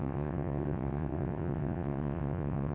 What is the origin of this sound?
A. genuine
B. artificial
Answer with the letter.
B